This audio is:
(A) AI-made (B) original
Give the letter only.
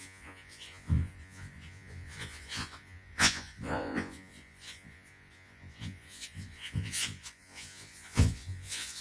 A